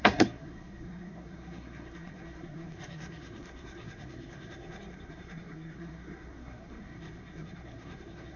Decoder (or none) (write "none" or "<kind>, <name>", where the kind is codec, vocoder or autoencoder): codec, SNAC